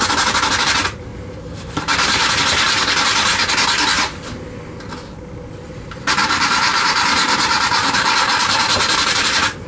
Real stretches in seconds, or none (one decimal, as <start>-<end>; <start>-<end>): 0.0-1.1; 2.3-6.2